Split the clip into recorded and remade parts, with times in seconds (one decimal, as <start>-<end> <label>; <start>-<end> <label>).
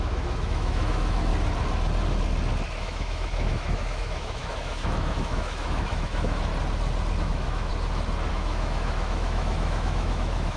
0.0-1.3 remade; 1.3-2.8 recorded; 2.8-6.5 remade; 6.5-7.2 recorded; 7.2-7.7 remade; 7.7-8.3 recorded; 8.3-10.6 remade